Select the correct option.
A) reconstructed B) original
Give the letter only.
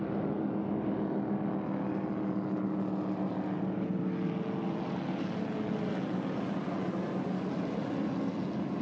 B